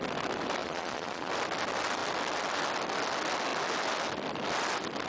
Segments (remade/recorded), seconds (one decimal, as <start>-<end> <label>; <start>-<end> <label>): 0.0-0.6 recorded; 0.6-1.3 remade; 1.3-5.1 recorded